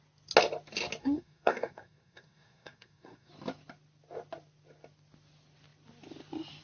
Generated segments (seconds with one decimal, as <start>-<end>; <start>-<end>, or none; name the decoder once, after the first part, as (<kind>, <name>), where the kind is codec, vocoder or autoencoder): 1.0-3.3 (codec, SNAC)